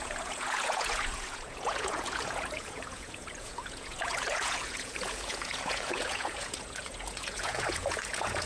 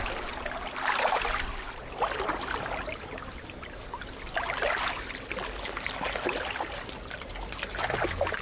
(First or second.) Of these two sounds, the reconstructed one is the first